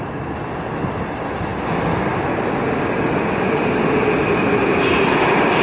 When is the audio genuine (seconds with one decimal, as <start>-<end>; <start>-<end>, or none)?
0.0-5.6